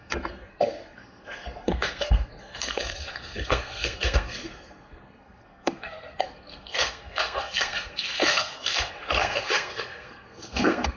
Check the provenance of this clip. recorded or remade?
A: remade